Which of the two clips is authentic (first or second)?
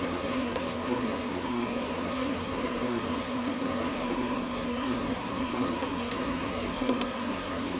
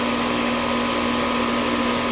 second